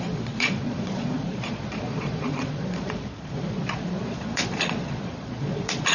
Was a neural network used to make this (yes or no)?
yes